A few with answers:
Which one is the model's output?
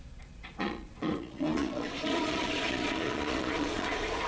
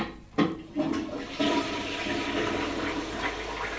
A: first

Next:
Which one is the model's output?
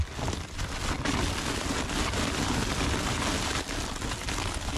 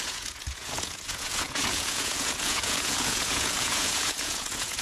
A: second